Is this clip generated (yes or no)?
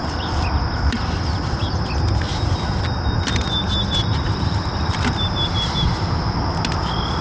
no